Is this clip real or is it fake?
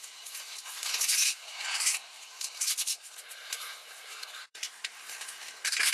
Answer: fake